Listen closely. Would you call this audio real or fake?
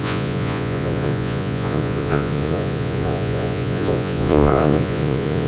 fake